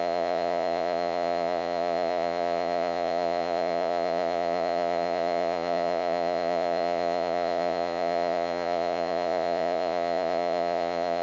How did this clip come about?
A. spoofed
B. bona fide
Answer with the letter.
A